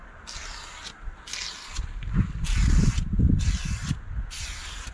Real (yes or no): yes